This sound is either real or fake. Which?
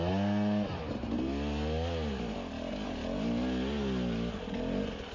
real